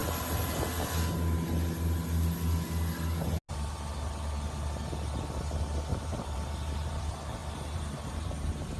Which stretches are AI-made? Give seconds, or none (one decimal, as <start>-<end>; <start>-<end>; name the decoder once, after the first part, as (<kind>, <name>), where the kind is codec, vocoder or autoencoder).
5.9-6.9 (vocoder, BigVGAN v2); 7.4-8.8